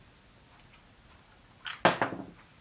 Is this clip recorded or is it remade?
recorded